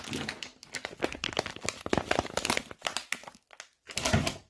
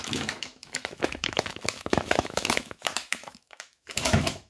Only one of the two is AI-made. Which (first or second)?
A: second